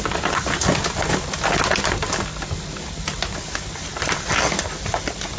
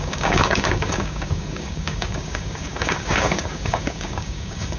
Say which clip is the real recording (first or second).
first